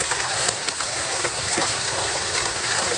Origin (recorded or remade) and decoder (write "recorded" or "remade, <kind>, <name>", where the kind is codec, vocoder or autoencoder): remade, codec, SNAC